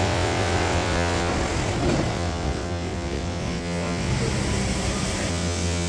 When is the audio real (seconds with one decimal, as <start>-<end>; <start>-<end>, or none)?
1.3-2.1; 4.1-5.3